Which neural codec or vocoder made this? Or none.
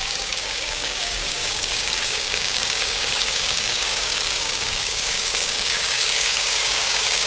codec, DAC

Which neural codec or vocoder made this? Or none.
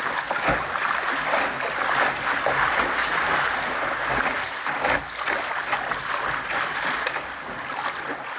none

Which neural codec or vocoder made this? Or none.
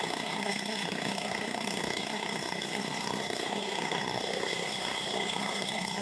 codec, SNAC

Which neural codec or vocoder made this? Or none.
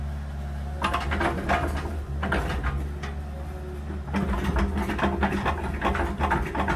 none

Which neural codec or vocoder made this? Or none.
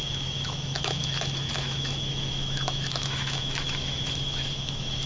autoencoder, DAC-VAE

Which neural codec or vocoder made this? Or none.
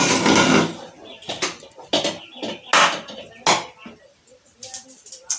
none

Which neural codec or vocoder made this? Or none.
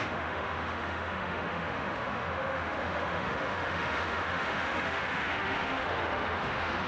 autoencoder, DAC-VAE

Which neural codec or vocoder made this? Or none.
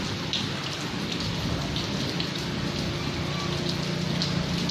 none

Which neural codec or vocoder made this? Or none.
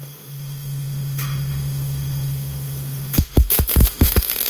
autoencoder, DAC-VAE